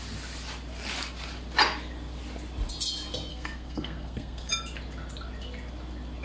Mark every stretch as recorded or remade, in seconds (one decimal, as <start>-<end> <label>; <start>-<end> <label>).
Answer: 0.0-3.3 recorded; 3.3-4.5 remade; 4.5-6.2 recorded